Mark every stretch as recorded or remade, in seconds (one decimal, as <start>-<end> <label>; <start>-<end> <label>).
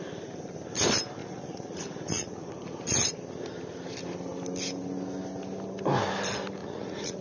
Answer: 0.0-1.2 recorded; 1.2-2.5 remade; 2.5-6.6 recorded; 6.6-7.2 remade